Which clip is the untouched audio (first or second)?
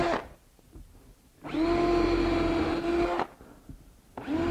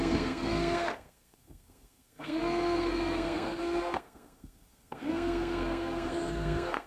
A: first